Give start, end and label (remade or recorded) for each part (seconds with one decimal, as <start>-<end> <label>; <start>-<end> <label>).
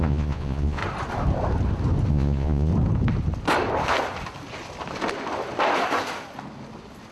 0.0-0.8 remade; 0.8-2.1 recorded; 2.1-2.7 remade; 2.7-7.1 recorded